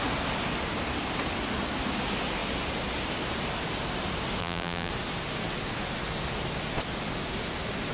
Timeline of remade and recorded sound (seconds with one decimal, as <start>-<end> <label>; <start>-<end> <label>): 0.0-4.4 recorded; 4.4-4.9 remade; 4.9-7.9 recorded